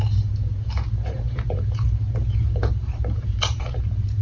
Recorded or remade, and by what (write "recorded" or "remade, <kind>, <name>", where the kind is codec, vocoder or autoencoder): remade, vocoder, BigVGAN v2